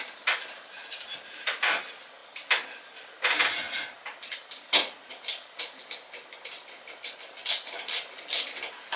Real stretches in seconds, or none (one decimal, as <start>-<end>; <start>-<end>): 0.0-9.0